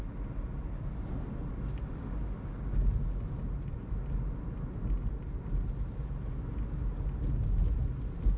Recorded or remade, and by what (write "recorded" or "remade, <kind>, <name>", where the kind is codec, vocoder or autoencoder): recorded